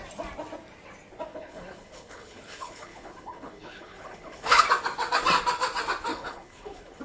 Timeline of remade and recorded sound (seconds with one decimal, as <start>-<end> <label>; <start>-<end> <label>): 0.0-1.3 recorded; 1.3-4.6 remade; 4.6-6.1 recorded; 6.1-7.0 remade